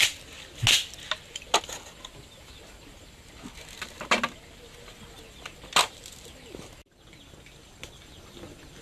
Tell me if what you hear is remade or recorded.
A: recorded